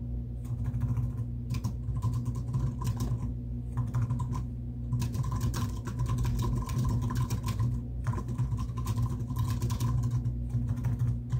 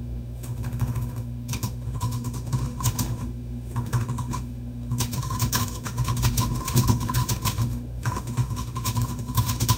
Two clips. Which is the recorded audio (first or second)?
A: first